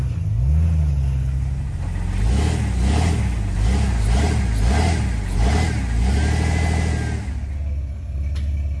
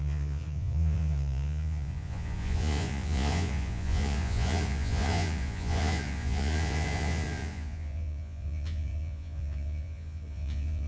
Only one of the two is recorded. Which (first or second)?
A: first